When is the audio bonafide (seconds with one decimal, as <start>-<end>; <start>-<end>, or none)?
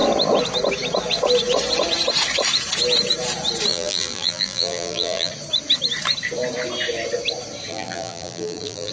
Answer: 0.0-3.7; 5.3-7.7